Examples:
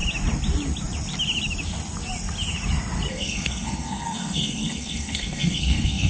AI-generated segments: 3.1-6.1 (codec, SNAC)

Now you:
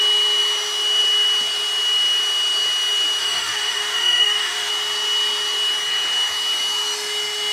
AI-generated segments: 3.2-4.7 (autoencoder, DAC-VAE)

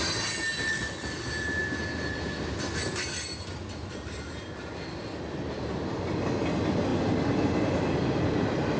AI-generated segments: none

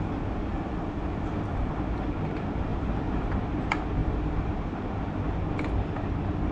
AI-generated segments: 0.5-1.7 (vocoder, BigVGAN v2); 2.7-3.4; 4.0-4.5

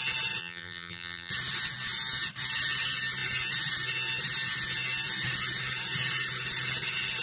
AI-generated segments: 0.4-1.3 (vocoder, BigVGAN v2)

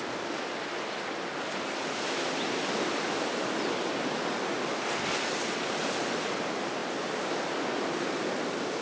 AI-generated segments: none

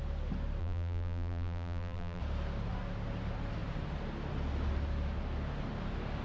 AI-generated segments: 0.6-2.2 (vocoder, BigVGAN v2)